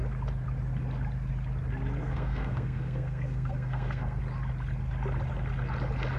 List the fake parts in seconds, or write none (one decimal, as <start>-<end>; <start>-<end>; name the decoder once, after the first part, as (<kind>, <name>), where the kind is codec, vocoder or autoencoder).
2.0-4.2 (codec, SNAC)